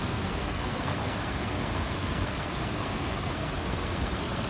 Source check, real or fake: fake